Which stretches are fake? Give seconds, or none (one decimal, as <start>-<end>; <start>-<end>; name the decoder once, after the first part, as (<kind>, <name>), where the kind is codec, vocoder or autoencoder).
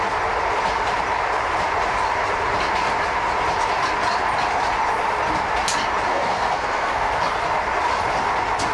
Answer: 6.1-7.1 (codec, SNAC)